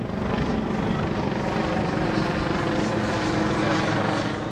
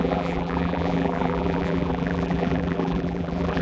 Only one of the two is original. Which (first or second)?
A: first